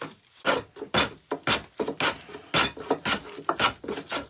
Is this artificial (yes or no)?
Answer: no